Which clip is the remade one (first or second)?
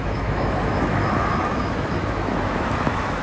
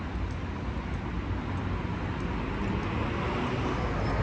first